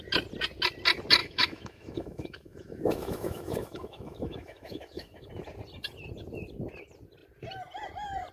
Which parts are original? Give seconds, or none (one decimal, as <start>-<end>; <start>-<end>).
0.0-1.2; 5.3-8.3